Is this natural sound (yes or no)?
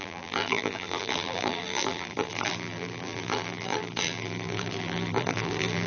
no